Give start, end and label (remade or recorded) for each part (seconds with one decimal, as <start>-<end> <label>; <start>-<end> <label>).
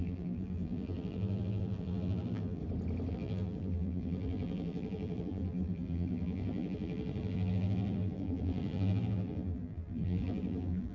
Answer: 0.0-2.6 remade; 2.6-3.1 recorded; 3.1-10.9 remade